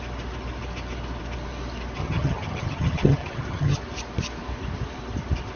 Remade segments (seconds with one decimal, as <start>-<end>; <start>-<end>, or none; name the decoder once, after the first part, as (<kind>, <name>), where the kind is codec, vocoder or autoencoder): 2.0-3.8 (vocoder, HiFi-GAN)